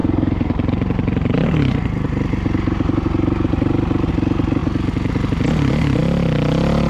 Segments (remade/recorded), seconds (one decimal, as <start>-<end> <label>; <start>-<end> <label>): 0.0-4.1 remade; 4.1-6.9 recorded